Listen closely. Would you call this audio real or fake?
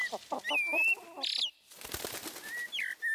real